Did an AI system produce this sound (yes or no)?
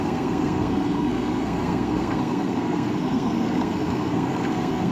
yes